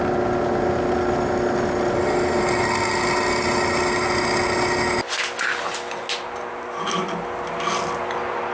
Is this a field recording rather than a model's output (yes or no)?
yes